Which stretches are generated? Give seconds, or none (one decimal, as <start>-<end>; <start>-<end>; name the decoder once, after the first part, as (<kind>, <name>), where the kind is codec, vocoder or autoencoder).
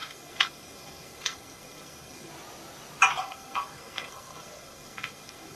0.0-2.3 (codec, SNAC); 3.2-5.6